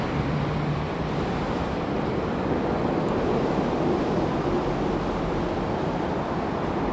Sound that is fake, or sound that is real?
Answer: fake